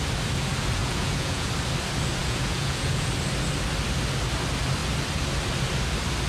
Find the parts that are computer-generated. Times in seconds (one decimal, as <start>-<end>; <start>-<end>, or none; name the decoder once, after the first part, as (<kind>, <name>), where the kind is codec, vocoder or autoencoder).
0.8-1.5 (vocoder, Vocos); 2.2-3.1